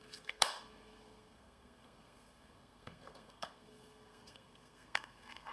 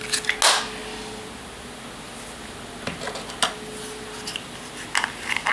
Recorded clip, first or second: second